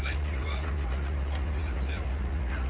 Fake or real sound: fake